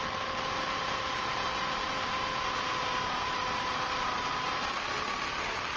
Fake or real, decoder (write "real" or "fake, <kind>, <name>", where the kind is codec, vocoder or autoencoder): real